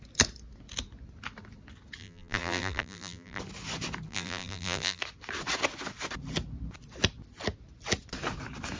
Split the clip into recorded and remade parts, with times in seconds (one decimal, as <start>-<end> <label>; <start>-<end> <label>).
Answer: 0.0-2.0 recorded; 2.0-3.4 remade; 3.4-4.1 recorded; 4.1-5.0 remade; 5.0-8.8 recorded